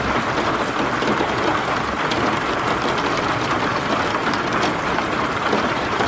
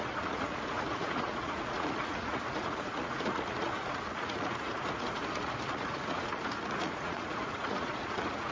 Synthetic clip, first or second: second